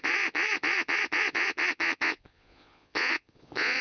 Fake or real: fake